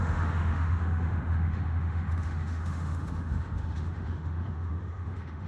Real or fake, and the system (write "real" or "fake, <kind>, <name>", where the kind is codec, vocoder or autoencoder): fake, autoencoder, DAC-VAE